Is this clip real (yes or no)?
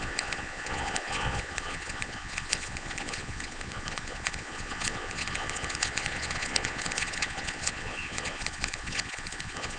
no